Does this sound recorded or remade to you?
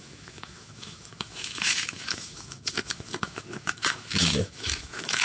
remade